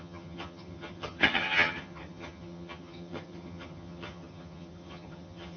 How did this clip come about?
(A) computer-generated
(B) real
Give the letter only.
A